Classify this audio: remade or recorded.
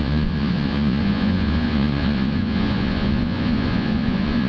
remade